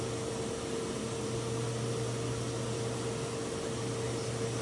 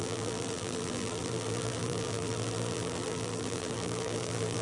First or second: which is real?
first